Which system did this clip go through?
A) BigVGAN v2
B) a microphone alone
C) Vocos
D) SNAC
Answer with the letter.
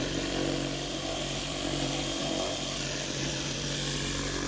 A